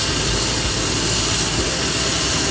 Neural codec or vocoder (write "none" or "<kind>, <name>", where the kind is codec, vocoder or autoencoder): none